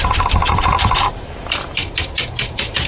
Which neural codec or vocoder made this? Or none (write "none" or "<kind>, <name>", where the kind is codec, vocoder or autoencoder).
vocoder, BigVGAN v2